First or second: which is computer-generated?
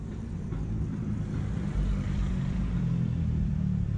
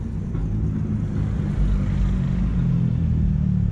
first